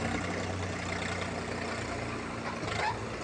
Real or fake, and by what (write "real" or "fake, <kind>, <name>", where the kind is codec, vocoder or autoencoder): real